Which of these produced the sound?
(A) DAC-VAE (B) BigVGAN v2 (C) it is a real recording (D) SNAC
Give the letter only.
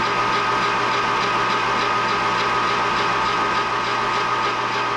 C